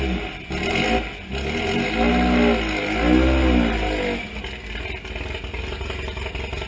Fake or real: real